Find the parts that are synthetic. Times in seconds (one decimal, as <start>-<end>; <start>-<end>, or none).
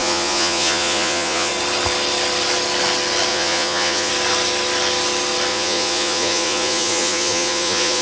0.0-1.5; 3.3-4.1; 5.5-8.0